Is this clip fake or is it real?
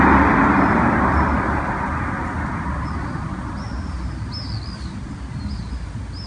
real